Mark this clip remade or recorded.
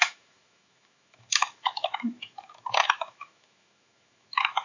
remade